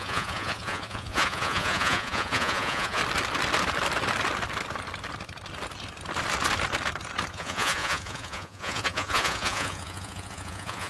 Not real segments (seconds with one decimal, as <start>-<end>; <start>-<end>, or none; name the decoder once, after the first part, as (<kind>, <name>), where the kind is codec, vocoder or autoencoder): 0.0-3.0 (vocoder, Vocos); 7.3-10.9